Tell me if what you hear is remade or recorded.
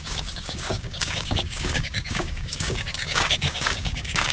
remade